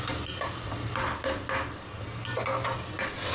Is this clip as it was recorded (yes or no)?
yes